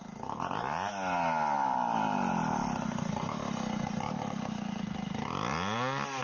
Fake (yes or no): no